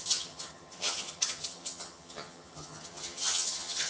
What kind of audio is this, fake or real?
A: fake